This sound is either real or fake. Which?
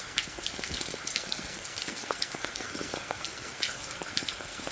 fake